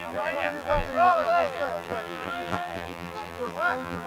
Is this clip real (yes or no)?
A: no